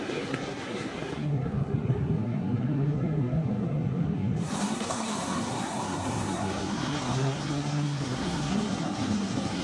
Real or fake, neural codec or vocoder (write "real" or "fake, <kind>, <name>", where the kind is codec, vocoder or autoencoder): fake, codec, SNAC